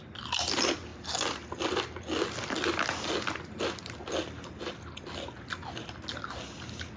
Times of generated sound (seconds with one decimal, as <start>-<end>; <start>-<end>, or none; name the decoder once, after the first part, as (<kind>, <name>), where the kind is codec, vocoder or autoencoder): none